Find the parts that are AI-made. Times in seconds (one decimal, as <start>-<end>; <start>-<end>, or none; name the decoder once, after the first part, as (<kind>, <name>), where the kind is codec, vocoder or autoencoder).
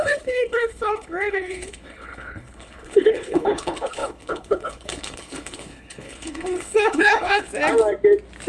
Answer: 0.0-7.5 (codec, HILCodec)